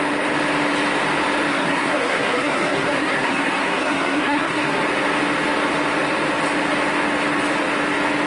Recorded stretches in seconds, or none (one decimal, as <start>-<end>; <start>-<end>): 0.0-1.5; 4.8-8.3